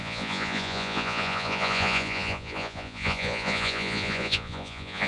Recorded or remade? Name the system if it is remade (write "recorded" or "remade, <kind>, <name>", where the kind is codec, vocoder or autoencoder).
remade, vocoder, Vocos